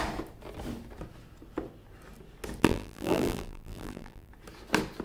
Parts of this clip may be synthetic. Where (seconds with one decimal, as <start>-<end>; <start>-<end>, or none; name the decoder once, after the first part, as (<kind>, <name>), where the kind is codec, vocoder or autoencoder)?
2.6-4.3 (vocoder, BigVGAN v2)